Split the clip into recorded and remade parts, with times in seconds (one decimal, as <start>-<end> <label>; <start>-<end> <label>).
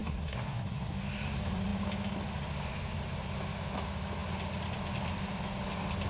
0.0-0.9 remade; 0.9-6.1 recorded